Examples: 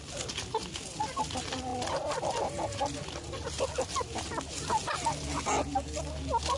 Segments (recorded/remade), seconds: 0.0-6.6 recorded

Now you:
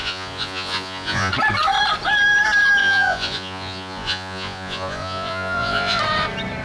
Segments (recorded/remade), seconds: 0.0-1.3 remade; 1.3-2.8 recorded; 2.8-6.0 remade; 6.0-6.6 recorded

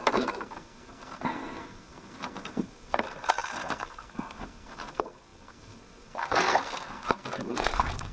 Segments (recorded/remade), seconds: 0.0-8.1 remade

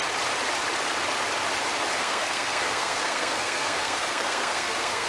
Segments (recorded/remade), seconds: 0.0-2.0 recorded; 2.0-5.1 remade

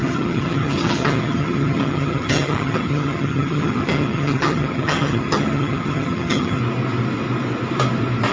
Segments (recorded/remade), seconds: 0.0-6.6 remade; 6.6-8.3 recorded